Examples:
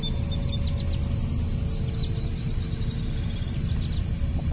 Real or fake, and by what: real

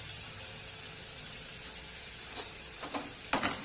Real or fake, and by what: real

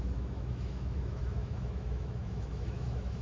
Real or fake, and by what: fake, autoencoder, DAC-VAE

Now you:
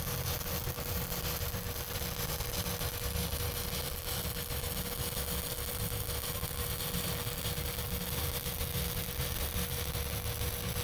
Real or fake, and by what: real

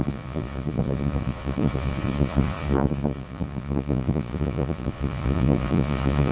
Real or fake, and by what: fake, vocoder, Vocos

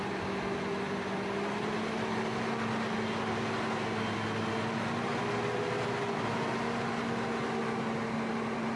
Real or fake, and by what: real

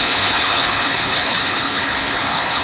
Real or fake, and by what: fake, codec, HILCodec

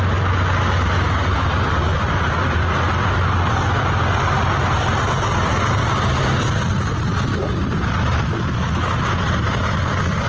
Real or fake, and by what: real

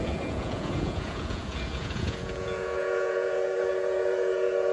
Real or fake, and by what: fake, vocoder, Vocos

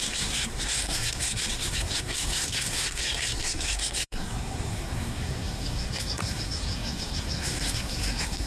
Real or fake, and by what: fake, codec, SNAC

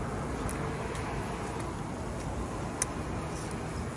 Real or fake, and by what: real